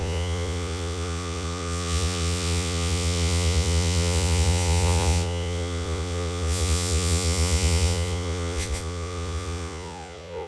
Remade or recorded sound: remade